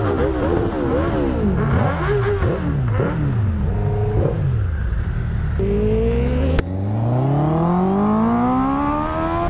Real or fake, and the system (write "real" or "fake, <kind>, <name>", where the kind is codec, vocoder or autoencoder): real